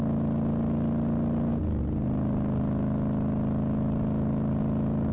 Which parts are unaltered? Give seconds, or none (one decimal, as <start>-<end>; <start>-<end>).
0.0-5.1